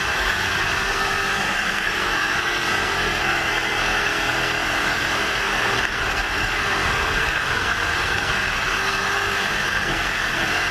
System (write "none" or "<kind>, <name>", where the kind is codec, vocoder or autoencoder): codec, SNAC